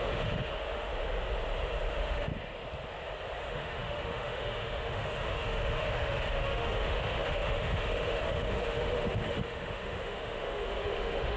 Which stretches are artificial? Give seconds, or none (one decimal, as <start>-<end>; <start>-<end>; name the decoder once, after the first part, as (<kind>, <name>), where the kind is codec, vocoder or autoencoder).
0.0-0.9 (autoencoder, DAC-VAE); 1.9-2.3; 3.4-11.4